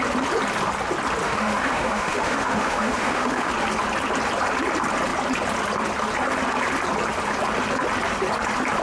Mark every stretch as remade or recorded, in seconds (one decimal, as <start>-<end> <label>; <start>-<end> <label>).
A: 0.0-1.2 recorded; 1.2-3.5 remade; 3.5-8.8 recorded